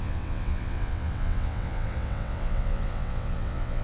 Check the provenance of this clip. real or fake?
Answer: fake